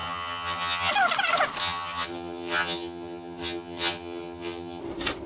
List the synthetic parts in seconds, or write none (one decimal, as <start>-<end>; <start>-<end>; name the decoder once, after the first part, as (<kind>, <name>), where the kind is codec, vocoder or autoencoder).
0.0-0.9 (vocoder, HiFi-GAN); 1.6-4.8